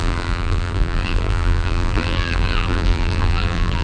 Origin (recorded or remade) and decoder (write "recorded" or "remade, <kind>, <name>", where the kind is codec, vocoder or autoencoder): remade, vocoder, BigVGAN v2